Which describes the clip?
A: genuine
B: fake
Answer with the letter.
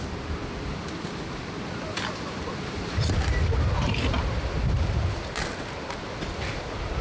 A